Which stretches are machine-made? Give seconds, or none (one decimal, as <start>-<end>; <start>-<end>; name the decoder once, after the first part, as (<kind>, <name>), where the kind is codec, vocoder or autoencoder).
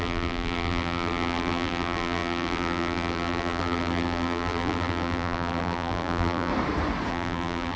0.0-6.5 (vocoder, BigVGAN v2); 7.1-7.8